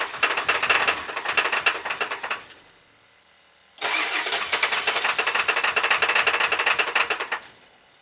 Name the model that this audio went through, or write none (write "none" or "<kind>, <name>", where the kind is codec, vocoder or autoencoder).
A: vocoder, BigVGAN v2